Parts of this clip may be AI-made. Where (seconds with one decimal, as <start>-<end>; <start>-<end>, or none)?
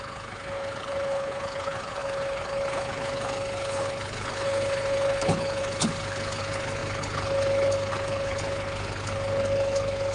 0.0-10.1